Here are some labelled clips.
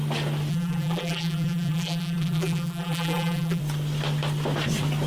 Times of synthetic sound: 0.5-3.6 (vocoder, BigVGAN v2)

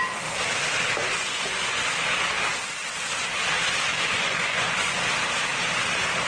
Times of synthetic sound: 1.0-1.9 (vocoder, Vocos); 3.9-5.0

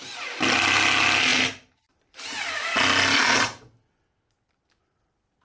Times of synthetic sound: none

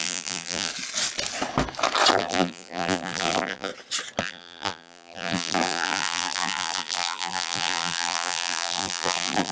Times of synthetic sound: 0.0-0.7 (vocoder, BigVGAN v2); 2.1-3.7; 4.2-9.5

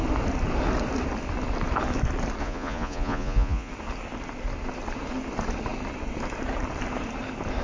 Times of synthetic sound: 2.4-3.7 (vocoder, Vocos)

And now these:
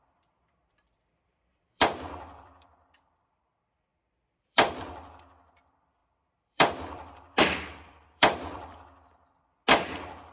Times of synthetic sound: 0.6-3.5 (vocoder, BigVGAN v2); 3.9-4.9; 6.0-9.3

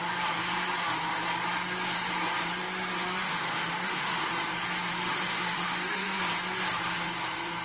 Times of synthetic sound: 3.2-4.3 (autoencoder, DAC-VAE); 4.9-6.2